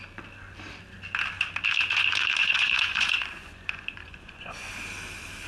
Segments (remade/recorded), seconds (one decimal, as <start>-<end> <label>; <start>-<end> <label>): 0.0-2.4 recorded; 2.4-4.7 remade; 4.7-5.5 recorded